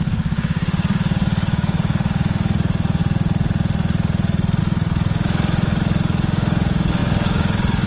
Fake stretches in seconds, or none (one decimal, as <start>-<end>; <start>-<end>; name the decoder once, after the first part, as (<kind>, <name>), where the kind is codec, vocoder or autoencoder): 0.0-3.0 (codec, DAC); 4.6-7.9

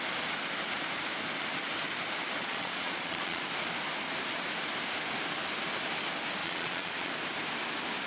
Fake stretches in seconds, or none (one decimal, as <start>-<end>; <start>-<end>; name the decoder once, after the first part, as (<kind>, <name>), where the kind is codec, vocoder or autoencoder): 2.4-3.4 (vocoder, Vocos); 6.4-7.1

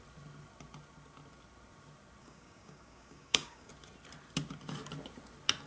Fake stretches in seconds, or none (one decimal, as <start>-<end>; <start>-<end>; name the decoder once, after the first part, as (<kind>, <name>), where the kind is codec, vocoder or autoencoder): 2.2-3.7 (codec, DAC)